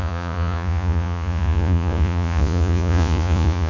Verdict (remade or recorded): remade